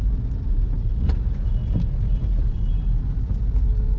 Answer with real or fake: real